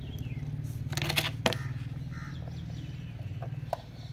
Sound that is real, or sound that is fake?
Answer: real